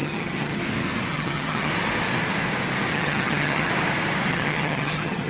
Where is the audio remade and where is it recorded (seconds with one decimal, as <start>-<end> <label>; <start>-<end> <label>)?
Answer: 0.0-0.6 remade; 0.6-1.1 recorded; 1.1-1.7 remade; 1.7-2.9 recorded; 2.9-3.7 remade; 3.7-4.3 recorded; 4.3-5.3 remade